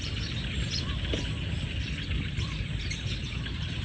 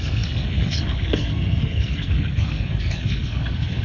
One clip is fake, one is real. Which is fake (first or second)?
second